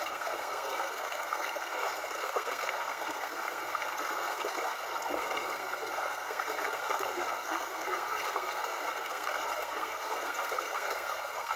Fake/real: fake